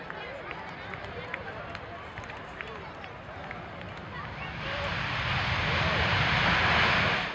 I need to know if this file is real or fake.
real